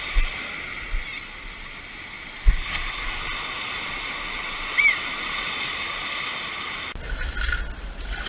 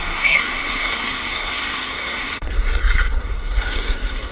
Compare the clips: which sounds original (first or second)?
first